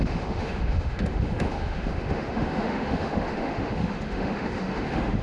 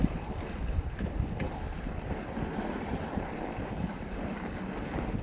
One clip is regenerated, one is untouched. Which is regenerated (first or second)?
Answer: first